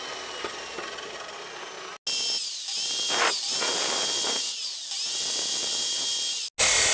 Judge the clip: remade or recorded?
recorded